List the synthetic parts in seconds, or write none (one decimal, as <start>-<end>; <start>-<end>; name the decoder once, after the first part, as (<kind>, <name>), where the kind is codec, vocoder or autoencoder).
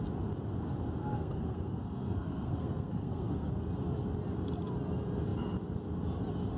1.1-3.5 (codec, SNAC)